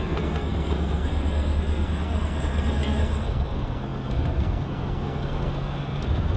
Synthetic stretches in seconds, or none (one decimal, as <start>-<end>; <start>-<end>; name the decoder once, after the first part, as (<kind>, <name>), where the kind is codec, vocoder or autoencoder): 0.0-6.4 (codec, SNAC)